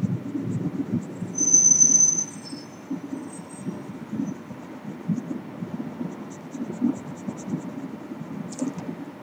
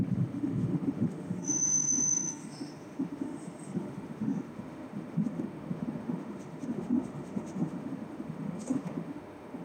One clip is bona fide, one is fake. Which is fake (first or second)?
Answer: second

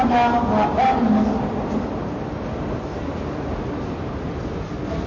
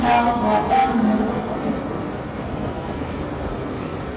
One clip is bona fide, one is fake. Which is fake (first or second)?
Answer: second